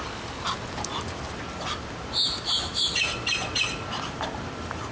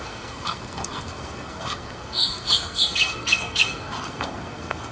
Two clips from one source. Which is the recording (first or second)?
first